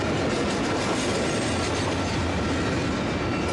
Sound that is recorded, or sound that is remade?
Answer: recorded